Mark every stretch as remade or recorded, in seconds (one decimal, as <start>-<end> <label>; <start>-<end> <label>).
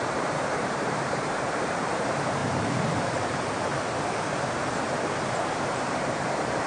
0.0-3.7 remade; 3.7-5.1 recorded; 5.1-6.7 remade